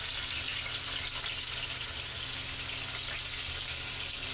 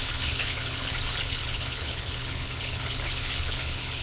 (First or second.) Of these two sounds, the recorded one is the first